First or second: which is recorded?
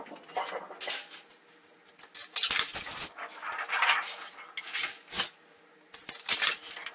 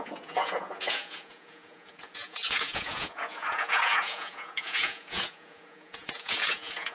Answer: first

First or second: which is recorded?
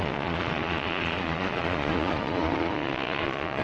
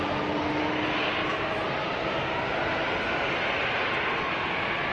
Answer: second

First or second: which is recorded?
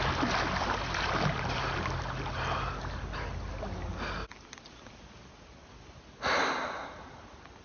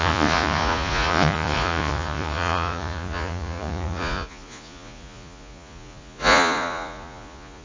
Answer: first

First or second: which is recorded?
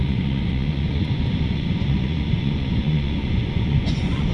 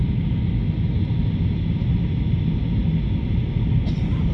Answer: second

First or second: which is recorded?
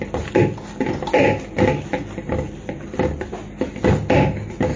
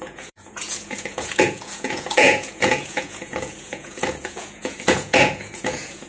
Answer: first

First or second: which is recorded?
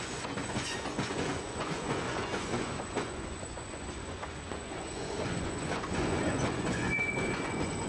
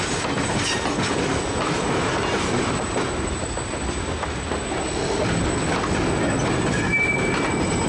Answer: second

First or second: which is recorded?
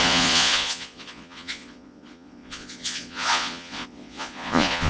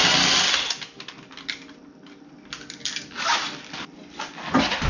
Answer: second